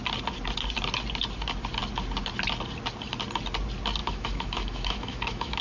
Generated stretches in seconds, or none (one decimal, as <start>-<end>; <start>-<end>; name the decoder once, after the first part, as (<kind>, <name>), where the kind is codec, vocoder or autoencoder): 4.0-5.6 (autoencoder, DAC-VAE)